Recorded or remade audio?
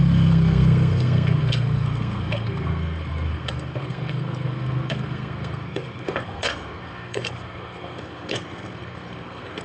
remade